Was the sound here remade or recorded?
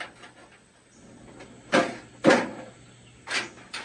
recorded